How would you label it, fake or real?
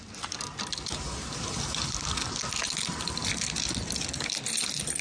real